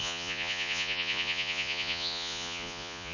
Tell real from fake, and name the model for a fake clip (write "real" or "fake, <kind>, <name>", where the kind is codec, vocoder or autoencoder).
fake, vocoder, Vocos